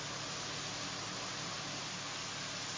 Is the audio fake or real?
real